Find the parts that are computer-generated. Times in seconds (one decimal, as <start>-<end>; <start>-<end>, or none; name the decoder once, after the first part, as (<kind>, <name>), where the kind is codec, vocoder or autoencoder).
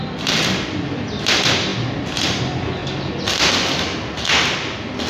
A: none